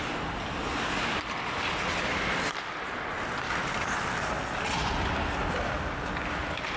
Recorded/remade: recorded